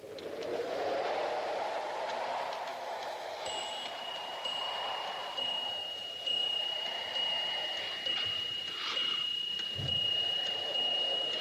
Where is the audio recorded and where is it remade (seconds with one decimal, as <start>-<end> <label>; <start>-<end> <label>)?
0.0-2.7 recorded; 2.7-3.7 remade; 3.7-5.6 recorded; 5.6-6.1 remade; 6.1-11.4 recorded